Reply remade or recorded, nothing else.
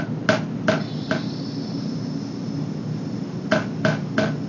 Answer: recorded